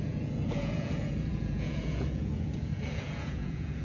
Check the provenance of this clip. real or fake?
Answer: fake